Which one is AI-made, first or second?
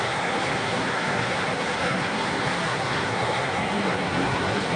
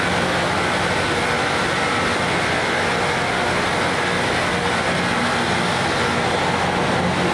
first